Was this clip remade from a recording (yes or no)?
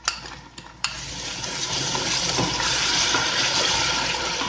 yes